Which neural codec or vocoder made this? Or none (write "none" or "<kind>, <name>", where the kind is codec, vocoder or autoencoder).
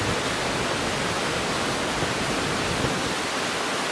none